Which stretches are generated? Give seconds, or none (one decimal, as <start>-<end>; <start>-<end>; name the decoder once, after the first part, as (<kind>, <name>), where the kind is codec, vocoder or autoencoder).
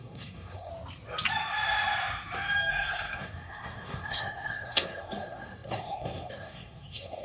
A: 0.0-0.7 (codec, SNAC); 2.7-7.2